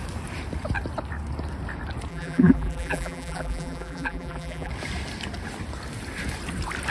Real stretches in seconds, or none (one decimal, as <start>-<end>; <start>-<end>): 0.0-2.1; 4.7-6.9